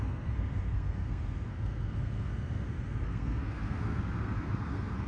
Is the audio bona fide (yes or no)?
no